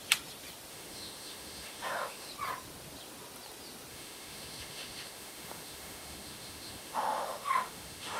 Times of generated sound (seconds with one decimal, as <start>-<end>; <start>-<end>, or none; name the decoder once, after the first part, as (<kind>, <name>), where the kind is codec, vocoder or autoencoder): 0.7-2.3 (autoencoder, DAC-VAE); 3.9-8.2